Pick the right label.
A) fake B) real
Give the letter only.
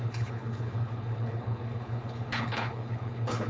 A